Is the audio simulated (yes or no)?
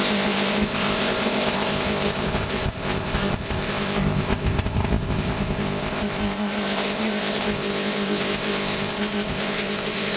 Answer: yes